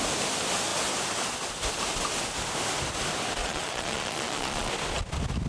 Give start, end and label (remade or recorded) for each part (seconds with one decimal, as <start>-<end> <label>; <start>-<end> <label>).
0.0-3.4 recorded; 3.4-4.7 remade; 4.7-5.5 recorded